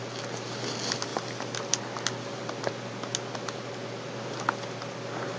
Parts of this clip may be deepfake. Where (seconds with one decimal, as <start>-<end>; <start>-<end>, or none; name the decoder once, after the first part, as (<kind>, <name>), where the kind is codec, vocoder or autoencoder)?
none